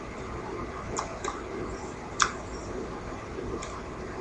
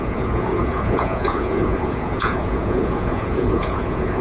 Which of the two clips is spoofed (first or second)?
second